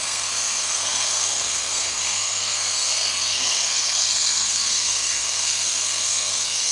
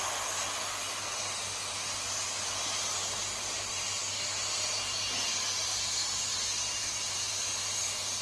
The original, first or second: second